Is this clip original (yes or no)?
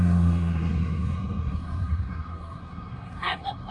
no